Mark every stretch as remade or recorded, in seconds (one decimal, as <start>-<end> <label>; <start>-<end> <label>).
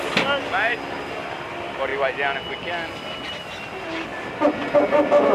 0.0-5.3 recorded